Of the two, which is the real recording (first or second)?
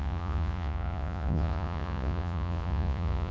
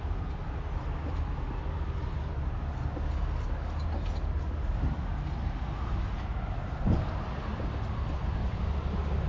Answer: second